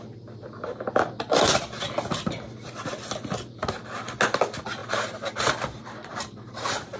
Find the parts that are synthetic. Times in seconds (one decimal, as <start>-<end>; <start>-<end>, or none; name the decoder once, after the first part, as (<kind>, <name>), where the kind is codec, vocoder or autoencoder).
4.8-5.4 (vocoder, BigVGAN v2); 6.1-7.0